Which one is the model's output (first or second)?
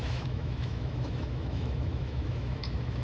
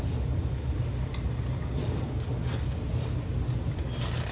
first